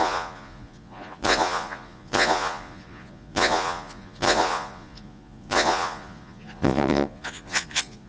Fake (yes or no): yes